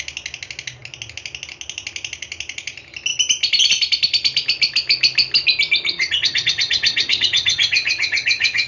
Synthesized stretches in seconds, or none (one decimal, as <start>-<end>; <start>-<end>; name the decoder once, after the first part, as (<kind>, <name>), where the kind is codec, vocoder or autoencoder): 5.9-8.7 (vocoder, HiFi-GAN)